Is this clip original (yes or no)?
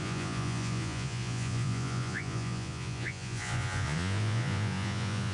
no